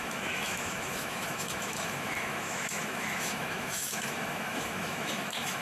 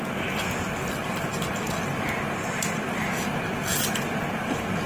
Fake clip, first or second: first